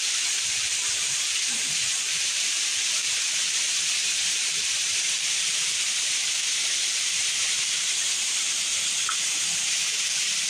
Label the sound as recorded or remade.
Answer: remade